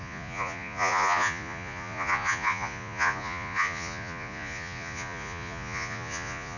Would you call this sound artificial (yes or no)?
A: yes